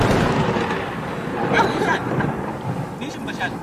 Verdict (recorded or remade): recorded